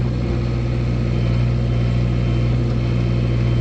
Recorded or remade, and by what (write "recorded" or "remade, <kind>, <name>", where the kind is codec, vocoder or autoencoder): recorded